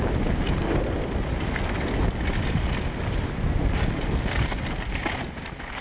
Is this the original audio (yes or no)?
yes